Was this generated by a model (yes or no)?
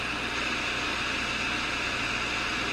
no